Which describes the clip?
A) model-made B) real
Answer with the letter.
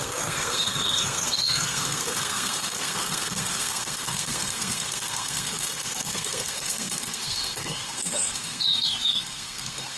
A